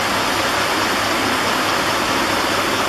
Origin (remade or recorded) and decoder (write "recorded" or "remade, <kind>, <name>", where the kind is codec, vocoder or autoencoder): recorded